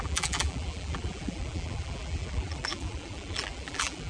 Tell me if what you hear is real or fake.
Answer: fake